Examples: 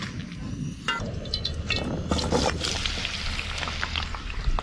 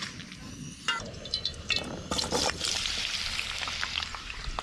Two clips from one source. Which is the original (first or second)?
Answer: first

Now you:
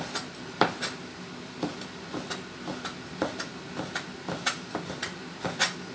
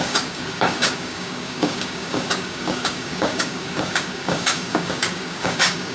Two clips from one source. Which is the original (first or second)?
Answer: first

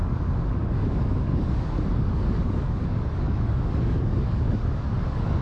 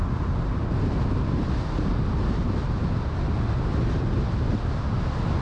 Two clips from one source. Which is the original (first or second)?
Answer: second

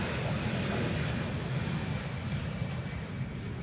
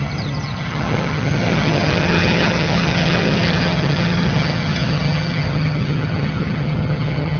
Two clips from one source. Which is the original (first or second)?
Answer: first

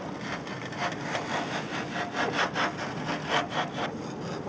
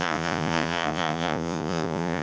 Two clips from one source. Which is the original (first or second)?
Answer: first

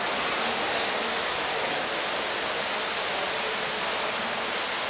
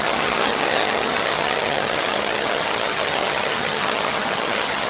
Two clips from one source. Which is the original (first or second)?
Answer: first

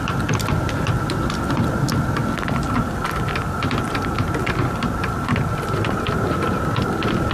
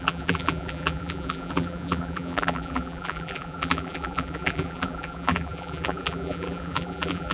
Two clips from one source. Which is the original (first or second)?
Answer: first